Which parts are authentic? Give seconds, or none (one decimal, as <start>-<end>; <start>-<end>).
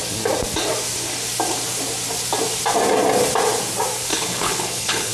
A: 0.0-4.1